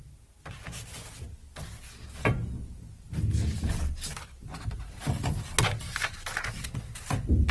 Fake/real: real